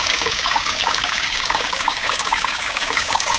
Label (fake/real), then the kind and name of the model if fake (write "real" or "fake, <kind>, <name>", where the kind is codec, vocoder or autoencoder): fake, codec, DAC